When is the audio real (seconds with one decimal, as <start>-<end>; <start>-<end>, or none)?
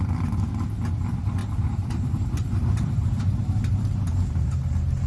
0.0-1.4; 4.5-5.1